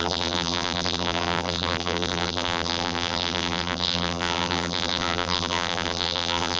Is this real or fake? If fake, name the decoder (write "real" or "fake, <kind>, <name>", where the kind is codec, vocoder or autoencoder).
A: fake, vocoder, BigVGAN v2